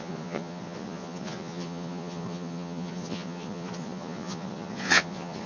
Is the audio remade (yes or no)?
yes